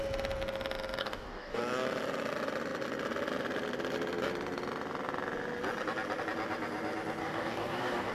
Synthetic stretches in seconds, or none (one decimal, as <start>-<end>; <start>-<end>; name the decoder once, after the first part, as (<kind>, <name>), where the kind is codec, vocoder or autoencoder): 1.0-1.6 (codec, DAC); 7.2-8.1